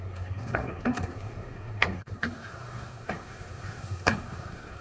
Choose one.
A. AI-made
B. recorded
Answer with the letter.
A